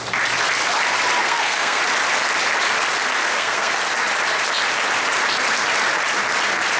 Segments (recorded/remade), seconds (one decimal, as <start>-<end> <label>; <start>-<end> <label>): 0.0-1.2 recorded; 1.2-1.8 remade; 1.8-3.2 recorded; 3.2-3.8 remade; 3.8-6.8 recorded